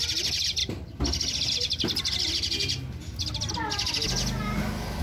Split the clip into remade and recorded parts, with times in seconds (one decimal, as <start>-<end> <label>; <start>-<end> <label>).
0.0-5.0 recorded